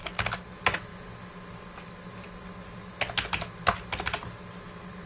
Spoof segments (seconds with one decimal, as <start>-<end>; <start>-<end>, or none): none